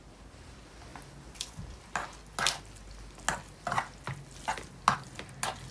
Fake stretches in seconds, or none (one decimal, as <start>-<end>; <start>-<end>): none